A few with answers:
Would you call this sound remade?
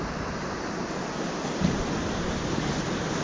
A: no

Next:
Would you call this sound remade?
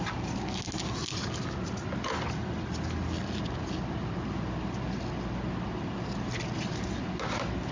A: no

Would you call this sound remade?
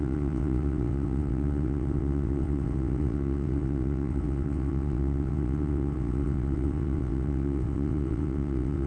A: yes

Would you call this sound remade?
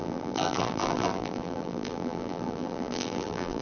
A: yes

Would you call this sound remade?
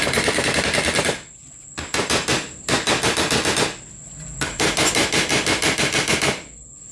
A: no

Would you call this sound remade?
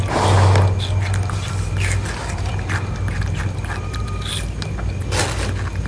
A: no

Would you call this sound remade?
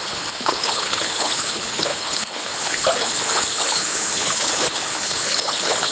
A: yes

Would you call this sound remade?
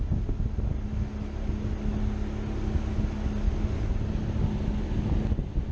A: no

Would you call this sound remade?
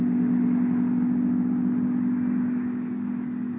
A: no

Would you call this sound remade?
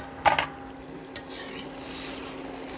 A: no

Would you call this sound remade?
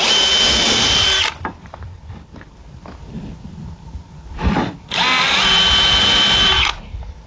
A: no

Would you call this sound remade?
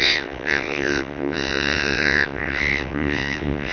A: yes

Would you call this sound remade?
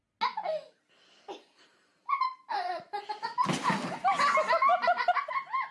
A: no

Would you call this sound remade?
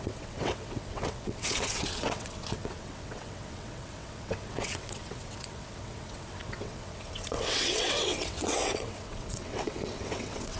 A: yes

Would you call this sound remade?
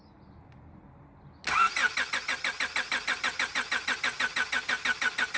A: no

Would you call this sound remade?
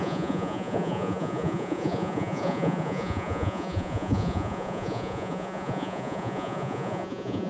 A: yes